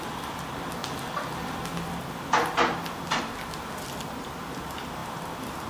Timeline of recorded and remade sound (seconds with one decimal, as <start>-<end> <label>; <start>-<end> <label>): 0.0-5.7 recorded